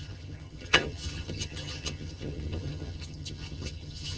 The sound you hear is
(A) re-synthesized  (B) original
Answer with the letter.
A